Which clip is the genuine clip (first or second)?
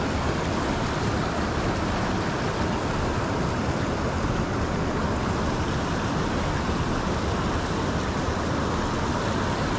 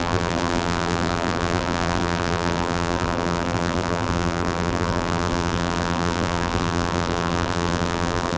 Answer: first